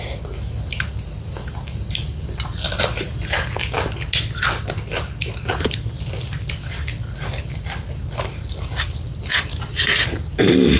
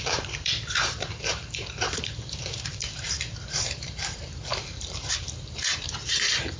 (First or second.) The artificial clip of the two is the second